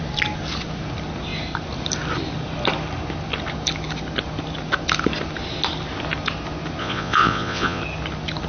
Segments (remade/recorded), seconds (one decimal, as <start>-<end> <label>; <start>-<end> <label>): 0.0-6.8 recorded; 6.8-7.8 remade; 7.8-8.5 recorded